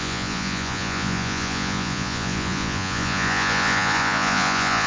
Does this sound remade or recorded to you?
remade